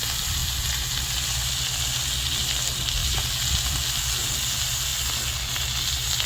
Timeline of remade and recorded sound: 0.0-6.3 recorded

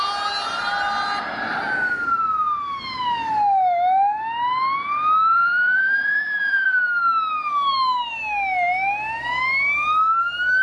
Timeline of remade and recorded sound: 0.0-5.3 recorded; 5.3-6.8 remade; 6.8-10.6 recorded